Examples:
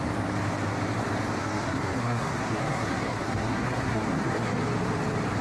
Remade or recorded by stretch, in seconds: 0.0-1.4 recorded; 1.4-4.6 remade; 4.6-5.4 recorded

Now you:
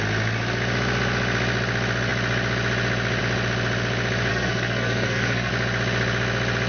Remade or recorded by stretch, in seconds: 0.0-4.3 recorded; 4.3-5.5 remade; 5.5-6.7 recorded

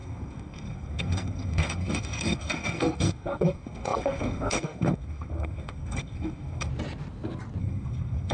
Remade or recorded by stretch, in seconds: 0.0-6.7 remade; 6.7-7.6 recorded; 7.6-8.3 remade

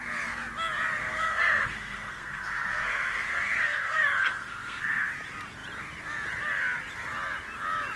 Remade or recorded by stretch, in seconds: 0.0-1.0 recorded; 1.0-5.1 remade; 5.1-8.0 recorded